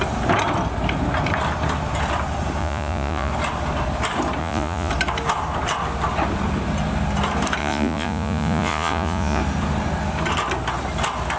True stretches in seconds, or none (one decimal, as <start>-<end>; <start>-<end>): 0.0-2.6; 3.3-4.4; 4.9-7.6; 9.4-11.4